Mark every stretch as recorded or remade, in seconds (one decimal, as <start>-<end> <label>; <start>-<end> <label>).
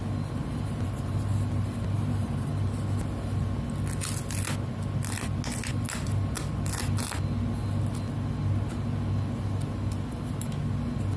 0.0-0.4 recorded; 0.4-2.5 remade; 2.5-11.2 recorded